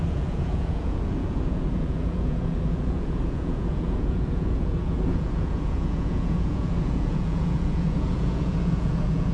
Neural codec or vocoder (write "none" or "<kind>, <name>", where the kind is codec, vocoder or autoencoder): vocoder, Vocos